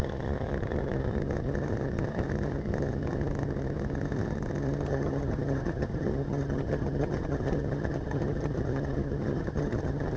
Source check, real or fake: fake